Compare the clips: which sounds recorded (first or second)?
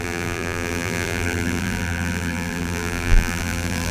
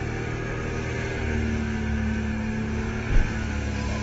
second